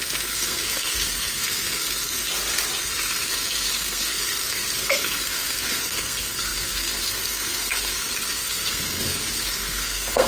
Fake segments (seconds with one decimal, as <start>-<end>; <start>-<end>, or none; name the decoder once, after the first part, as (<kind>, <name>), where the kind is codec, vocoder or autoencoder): 0.0-2.3 (codec, SNAC); 2.8-10.3

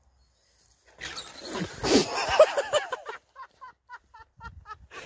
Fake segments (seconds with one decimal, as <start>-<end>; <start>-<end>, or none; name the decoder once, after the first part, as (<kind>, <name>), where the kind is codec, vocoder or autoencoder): none